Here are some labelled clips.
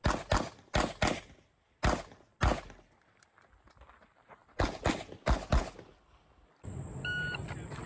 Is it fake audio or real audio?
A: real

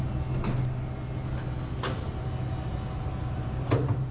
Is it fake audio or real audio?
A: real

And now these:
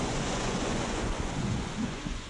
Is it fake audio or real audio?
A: fake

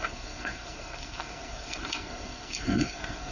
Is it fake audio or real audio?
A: fake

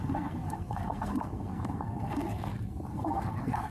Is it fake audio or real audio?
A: fake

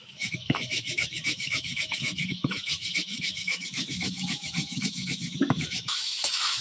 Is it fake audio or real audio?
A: fake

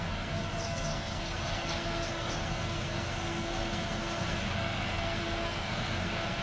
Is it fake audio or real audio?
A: fake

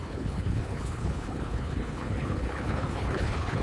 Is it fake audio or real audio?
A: fake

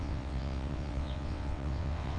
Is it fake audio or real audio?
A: fake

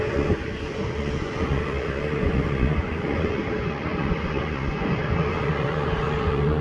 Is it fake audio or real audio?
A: fake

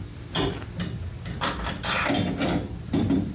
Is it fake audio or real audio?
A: fake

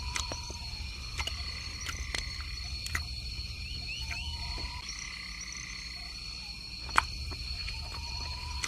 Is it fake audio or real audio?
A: real